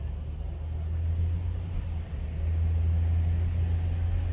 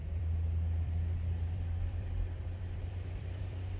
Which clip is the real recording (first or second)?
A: first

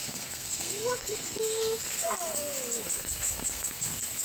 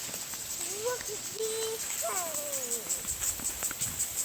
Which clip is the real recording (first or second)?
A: second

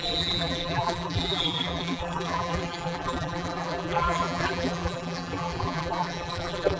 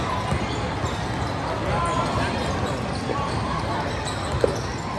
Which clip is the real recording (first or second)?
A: second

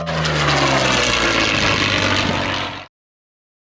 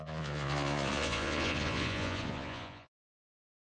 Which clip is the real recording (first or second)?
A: first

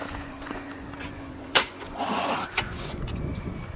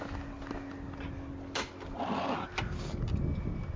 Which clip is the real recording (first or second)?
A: second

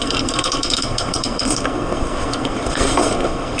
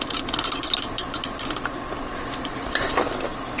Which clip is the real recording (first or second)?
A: second